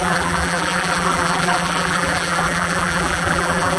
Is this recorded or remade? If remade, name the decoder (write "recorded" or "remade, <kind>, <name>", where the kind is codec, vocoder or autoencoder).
remade, vocoder, BigVGAN v2